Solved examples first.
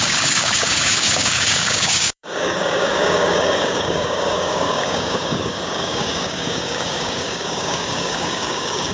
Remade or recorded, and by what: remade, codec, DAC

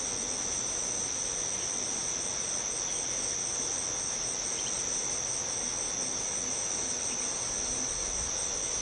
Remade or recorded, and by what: recorded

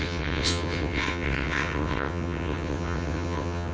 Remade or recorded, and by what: remade, vocoder, WaveNeXt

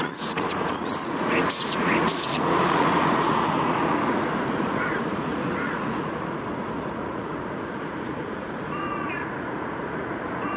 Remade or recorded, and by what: remade, vocoder, Vocos